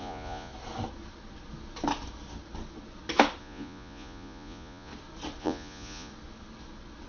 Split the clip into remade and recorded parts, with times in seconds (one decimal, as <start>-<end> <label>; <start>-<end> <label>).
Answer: 0.0-0.5 remade; 0.5-3.4 recorded; 3.4-4.9 remade; 4.9-5.4 recorded; 5.4-6.1 remade; 6.1-7.1 recorded

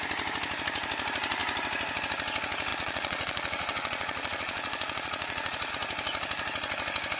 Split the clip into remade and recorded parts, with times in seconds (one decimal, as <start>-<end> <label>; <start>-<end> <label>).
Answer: 0.0-2.7 recorded; 2.7-5.7 remade; 5.7-7.2 recorded